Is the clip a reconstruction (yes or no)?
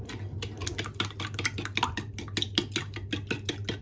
no